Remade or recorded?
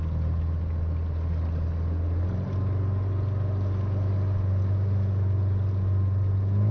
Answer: recorded